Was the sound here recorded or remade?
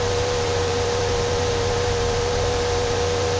remade